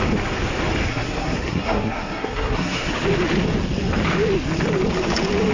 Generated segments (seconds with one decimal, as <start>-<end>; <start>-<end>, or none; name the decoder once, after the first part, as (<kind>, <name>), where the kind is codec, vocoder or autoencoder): 0.9-2.9 (codec, SNAC)